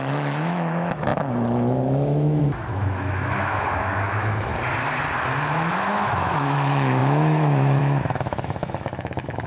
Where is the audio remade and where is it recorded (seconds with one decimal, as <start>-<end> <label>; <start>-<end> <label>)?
0.0-4.5 remade; 4.5-5.9 recorded; 5.9-9.5 remade